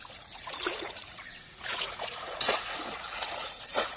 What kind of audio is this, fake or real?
fake